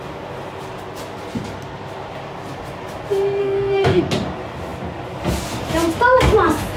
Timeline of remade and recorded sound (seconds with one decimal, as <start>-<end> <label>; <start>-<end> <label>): 0.0-3.4 recorded; 3.4-4.0 remade; 4.0-6.8 recorded